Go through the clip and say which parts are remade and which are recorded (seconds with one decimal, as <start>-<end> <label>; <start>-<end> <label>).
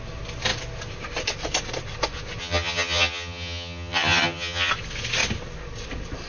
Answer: 0.0-2.4 recorded; 2.4-4.7 remade; 4.7-6.3 recorded